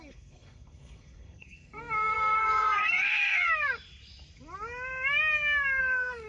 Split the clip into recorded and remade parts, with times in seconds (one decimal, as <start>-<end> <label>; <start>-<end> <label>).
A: 0.0-3.4 remade; 3.4-5.8 recorded; 5.8-6.3 remade